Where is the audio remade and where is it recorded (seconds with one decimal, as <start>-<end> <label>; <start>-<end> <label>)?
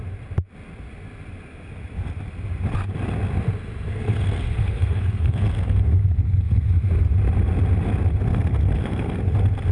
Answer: 0.0-3.9 recorded; 3.9-6.7 remade; 6.7-8.3 recorded; 8.3-9.2 remade; 9.2-9.7 recorded